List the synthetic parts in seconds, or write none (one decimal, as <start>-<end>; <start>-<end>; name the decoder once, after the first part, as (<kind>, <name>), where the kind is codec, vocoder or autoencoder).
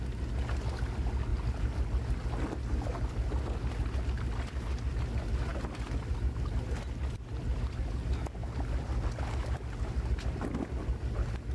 none